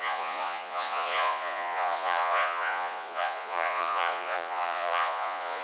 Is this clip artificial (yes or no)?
yes